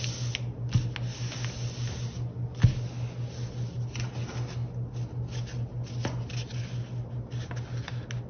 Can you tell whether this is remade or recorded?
recorded